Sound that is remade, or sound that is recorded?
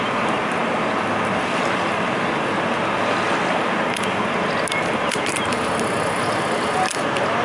recorded